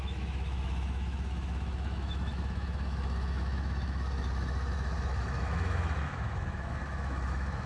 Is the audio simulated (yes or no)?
yes